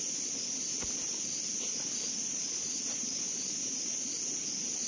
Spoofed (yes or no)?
no